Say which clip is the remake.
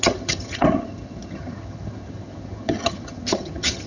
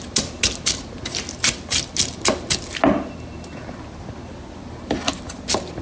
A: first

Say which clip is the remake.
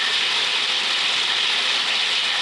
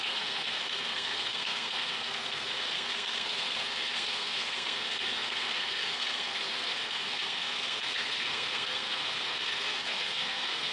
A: second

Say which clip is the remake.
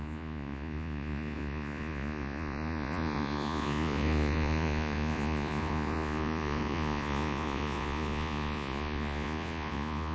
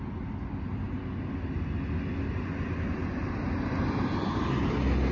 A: first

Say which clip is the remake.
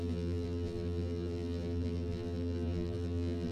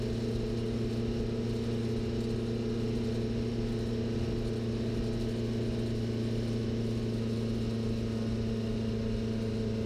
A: first